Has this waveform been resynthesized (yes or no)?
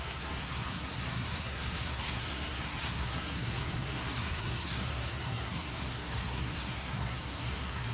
yes